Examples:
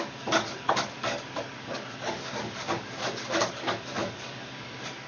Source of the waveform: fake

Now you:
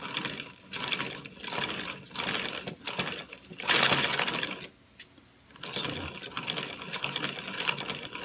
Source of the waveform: real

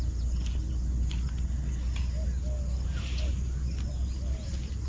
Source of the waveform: real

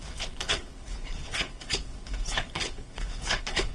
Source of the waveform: fake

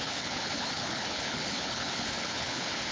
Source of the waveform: fake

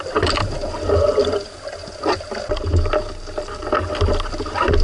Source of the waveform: real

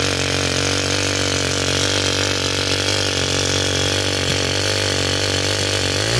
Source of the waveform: real